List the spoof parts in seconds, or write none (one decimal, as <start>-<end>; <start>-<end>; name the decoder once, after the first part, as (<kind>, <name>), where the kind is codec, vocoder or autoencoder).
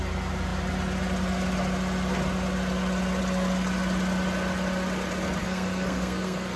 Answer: 5.4-6.6 (codec, SNAC)